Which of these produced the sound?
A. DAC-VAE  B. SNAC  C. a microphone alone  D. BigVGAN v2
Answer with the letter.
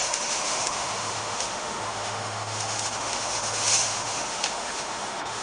A